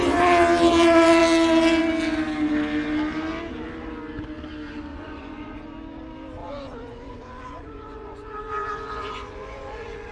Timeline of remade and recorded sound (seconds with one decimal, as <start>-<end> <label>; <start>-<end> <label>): 0.0-4.9 recorded; 4.9-5.6 remade; 5.6-6.4 recorded; 6.4-10.1 remade